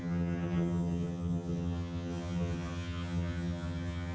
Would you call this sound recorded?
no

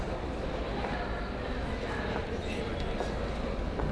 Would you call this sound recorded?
yes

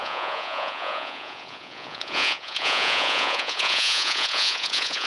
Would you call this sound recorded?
no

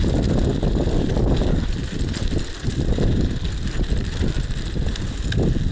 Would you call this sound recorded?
yes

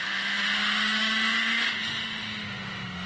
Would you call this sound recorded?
no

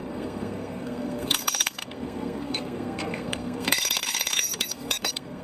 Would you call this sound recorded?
no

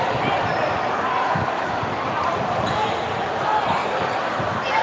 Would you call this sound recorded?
yes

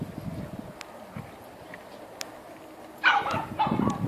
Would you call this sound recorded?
yes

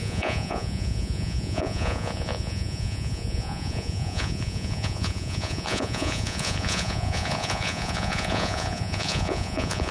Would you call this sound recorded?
no